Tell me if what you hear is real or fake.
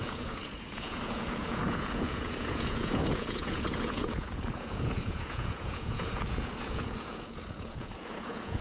fake